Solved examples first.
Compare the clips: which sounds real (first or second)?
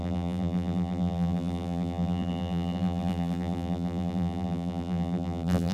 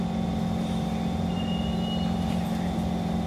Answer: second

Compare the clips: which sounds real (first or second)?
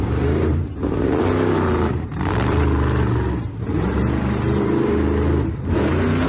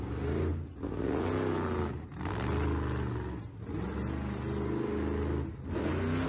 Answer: second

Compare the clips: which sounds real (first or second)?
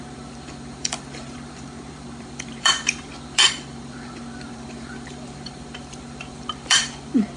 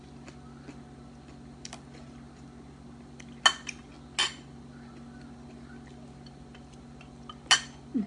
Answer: second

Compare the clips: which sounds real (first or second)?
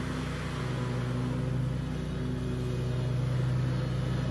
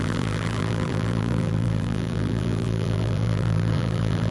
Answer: first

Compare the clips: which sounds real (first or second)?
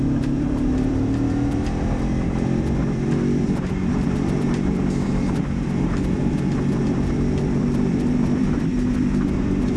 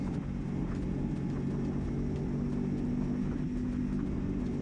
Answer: second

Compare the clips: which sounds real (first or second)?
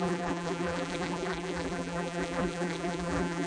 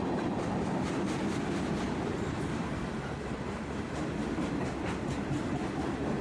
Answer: second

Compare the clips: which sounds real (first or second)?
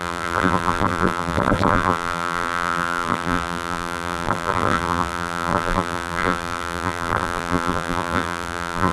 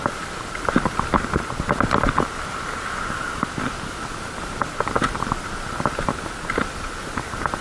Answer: second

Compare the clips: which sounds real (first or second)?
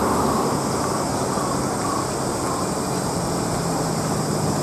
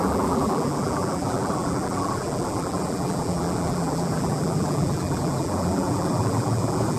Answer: first